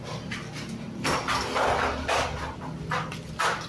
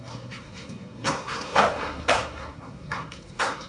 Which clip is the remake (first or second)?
second